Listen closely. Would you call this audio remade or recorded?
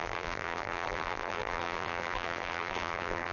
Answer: remade